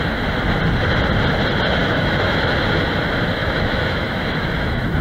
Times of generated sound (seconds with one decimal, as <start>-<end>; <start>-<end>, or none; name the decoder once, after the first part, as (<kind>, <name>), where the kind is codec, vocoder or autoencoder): 1.8-2.5 (autoencoder, DAC-VAE); 3.4-5.0